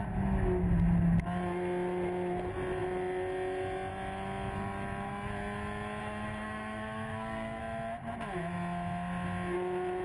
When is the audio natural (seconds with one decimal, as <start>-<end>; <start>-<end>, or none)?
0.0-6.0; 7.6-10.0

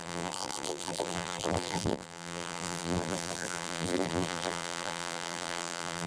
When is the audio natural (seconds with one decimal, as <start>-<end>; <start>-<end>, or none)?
none

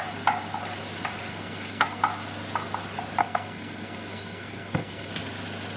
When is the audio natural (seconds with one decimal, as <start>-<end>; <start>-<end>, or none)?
0.0-1.3; 2.0-3.2; 5.1-5.8